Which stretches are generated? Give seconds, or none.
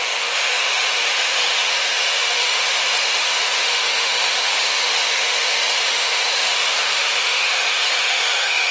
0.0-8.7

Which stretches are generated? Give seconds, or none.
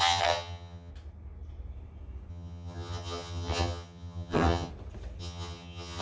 0.0-0.9; 2.3-4.7; 5.2-6.0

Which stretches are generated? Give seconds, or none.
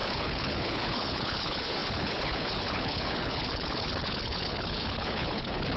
0.0-5.8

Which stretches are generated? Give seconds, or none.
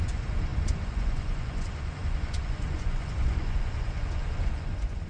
0.0-5.1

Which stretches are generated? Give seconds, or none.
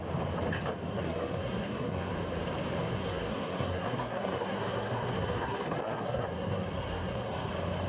0.9-2.1; 2.8-7.5